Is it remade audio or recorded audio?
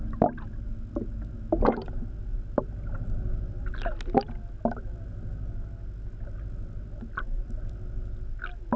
recorded